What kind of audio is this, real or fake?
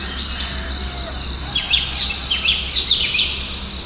real